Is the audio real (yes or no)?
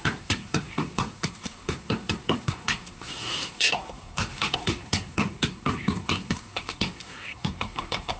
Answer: no